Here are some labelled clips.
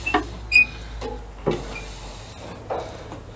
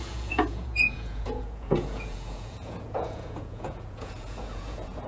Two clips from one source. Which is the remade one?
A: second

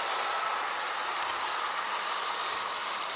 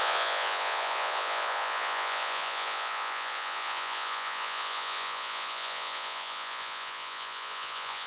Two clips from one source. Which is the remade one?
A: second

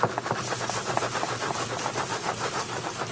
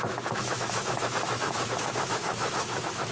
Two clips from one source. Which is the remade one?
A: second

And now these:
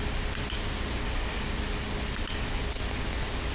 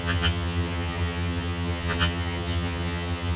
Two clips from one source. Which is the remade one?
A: second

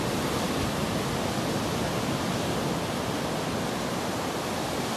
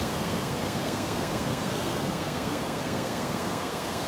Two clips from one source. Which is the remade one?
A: second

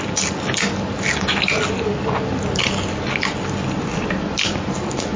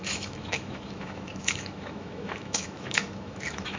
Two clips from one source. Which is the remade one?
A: second